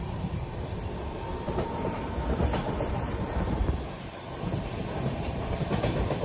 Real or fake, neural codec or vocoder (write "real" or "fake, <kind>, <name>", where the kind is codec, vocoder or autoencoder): fake, vocoder, BigVGAN v2